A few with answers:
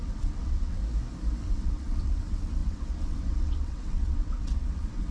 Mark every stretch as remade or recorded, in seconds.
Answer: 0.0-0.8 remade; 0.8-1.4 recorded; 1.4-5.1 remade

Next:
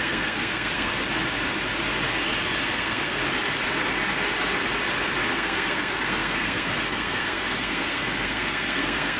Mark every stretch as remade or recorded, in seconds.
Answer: 0.0-0.9 remade; 0.9-2.6 recorded; 2.6-3.2 remade; 3.2-5.3 recorded; 5.3-9.2 remade

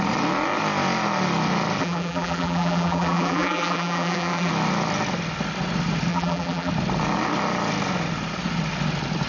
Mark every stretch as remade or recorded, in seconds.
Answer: 0.0-1.8 recorded; 1.8-4.5 remade; 4.5-6.1 recorded; 6.1-6.7 remade; 6.7-9.3 recorded

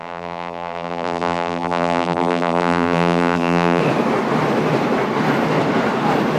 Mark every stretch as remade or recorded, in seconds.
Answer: 0.0-3.8 remade; 3.8-6.4 recorded